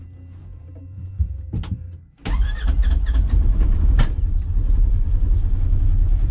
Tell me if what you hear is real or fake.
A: fake